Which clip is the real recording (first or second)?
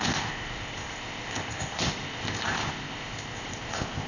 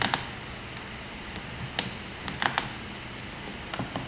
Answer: second